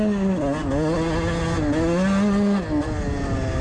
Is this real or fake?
real